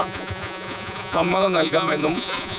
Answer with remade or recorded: remade